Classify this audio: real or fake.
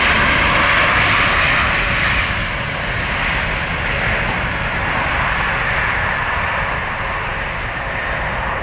real